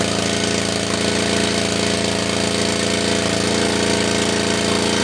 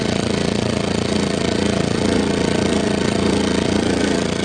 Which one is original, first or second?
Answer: first